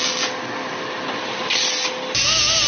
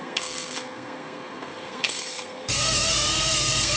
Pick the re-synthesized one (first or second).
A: second